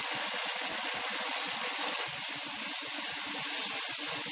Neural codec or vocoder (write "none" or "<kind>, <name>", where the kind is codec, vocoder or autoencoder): none